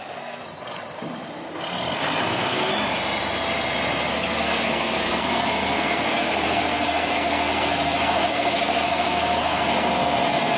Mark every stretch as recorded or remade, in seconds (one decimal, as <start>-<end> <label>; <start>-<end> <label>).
0.0-0.4 remade; 0.4-2.2 recorded; 2.2-2.7 remade; 2.7-4.1 recorded; 4.1-10.6 remade